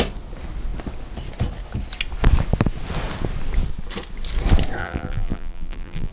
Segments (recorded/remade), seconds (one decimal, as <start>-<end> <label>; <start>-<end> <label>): 0.0-4.8 recorded; 4.8-6.1 remade